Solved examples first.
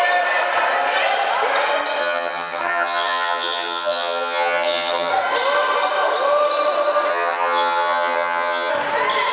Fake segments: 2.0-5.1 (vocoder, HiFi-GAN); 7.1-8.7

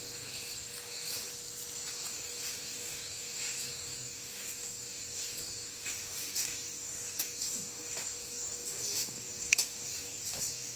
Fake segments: 0.0-1.3 (codec, DAC); 1.9-10.8

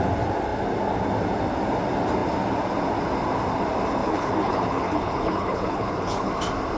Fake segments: 4.0-6.3 (codec, HILCodec)

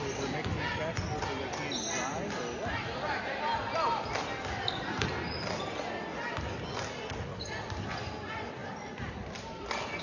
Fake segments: 8.6-10.0 (vocoder, BigVGAN v2)

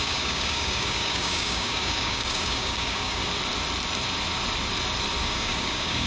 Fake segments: 0.0-3.2 (codec, DAC); 5.2-6.1

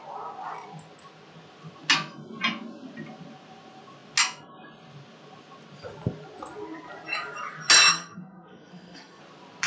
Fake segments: 7.9-9.2 (codec, SNAC)

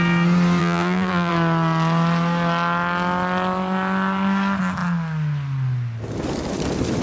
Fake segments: 0.6-1.3 (vocoder, BigVGAN v2)